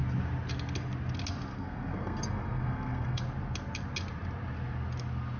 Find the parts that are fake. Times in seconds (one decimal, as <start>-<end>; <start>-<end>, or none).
1.5-3.2